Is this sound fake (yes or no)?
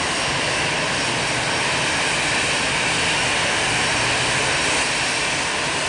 no